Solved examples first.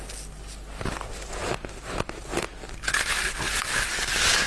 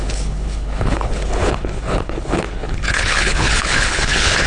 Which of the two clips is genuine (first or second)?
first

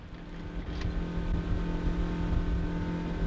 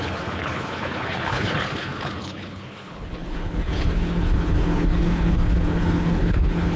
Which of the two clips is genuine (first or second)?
first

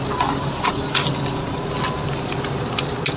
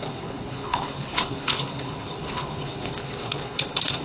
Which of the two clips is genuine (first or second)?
first